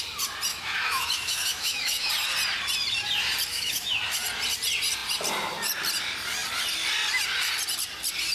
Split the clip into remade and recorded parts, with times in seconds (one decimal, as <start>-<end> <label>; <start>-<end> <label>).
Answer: 0.0-0.5 recorded; 0.5-2.1 remade; 2.1-3.5 recorded; 3.5-4.0 remade; 4.0-8.3 recorded

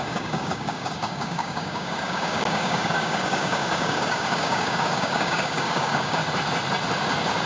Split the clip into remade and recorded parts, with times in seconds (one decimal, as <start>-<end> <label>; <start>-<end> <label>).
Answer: 0.0-6.2 remade; 6.2-7.5 recorded

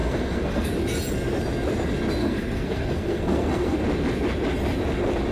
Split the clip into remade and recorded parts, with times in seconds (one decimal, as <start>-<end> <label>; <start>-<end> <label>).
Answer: 0.0-0.7 remade; 0.7-2.2 recorded; 2.2-3.8 remade; 3.8-5.3 recorded

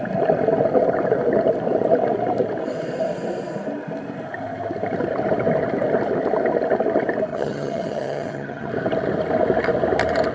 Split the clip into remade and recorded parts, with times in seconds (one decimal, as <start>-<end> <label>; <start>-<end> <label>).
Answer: 0.0-7.3 recorded; 7.3-8.7 remade; 8.7-10.3 recorded